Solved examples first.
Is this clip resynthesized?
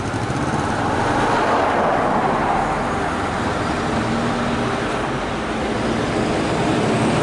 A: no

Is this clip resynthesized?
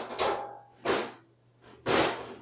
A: no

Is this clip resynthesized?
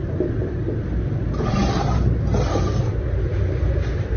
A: yes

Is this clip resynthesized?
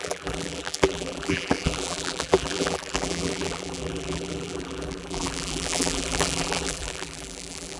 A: yes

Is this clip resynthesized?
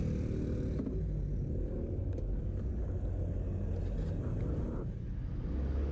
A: no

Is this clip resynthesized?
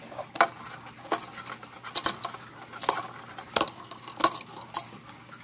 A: no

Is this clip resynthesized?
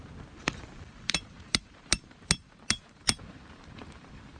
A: yes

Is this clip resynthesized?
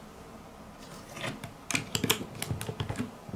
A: no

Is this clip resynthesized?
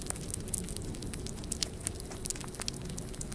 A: no